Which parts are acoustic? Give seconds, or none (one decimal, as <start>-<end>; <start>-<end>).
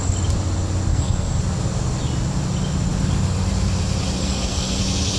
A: 0.0-0.9; 1.4-4.2; 4.8-5.2